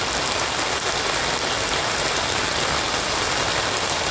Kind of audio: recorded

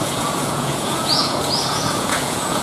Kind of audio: remade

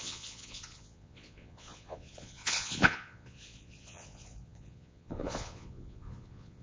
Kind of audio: remade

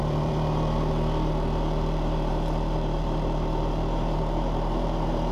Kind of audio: remade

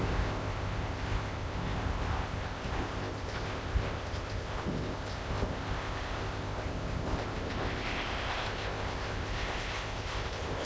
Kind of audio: remade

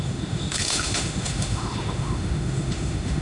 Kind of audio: remade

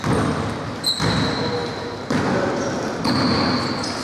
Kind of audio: recorded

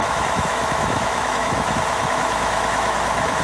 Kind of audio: remade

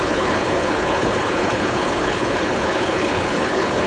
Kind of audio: remade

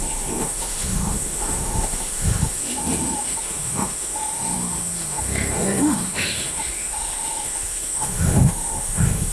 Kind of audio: remade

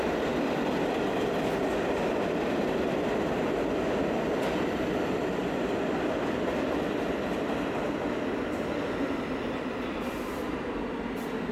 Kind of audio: recorded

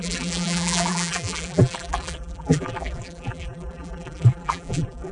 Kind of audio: remade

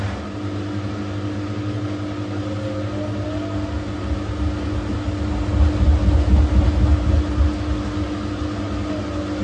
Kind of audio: recorded